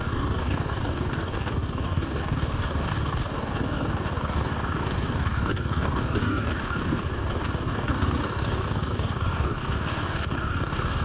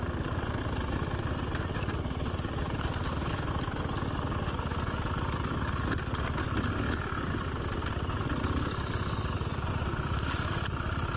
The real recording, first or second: second